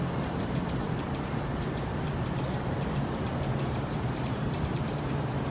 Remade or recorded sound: remade